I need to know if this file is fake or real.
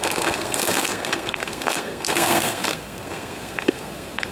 fake